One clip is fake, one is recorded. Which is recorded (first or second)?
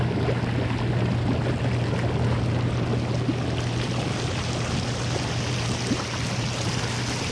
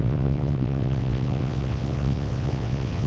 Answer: first